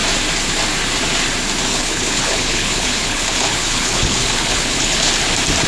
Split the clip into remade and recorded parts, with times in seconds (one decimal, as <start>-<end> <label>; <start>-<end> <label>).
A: 0.0-1.7 recorded; 1.7-5.1 remade; 5.1-5.7 recorded